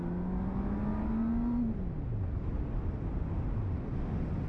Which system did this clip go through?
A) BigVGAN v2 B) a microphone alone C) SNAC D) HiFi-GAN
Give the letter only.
B